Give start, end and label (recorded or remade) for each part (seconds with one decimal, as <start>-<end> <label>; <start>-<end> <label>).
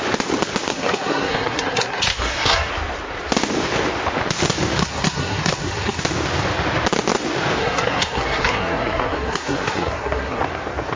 0.0-0.7 recorded; 0.7-2.7 remade; 2.7-4.8 recorded; 4.8-6.0 remade; 6.0-7.6 recorded; 7.6-10.4 remade; 10.4-11.0 recorded